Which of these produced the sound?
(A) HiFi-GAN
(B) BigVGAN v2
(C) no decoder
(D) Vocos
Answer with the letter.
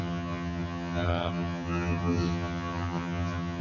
A